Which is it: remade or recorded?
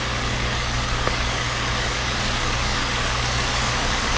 remade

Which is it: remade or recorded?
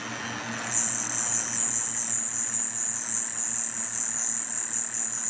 recorded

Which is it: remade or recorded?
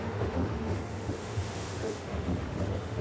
remade